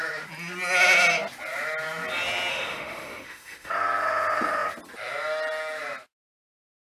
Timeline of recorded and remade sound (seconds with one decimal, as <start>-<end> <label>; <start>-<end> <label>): 0.0-2.5 recorded; 2.5-3.7 remade; 3.7-6.9 recorded